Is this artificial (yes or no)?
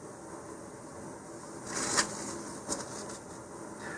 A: no